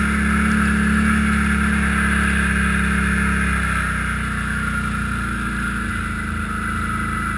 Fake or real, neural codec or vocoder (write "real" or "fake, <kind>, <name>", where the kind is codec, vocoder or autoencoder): real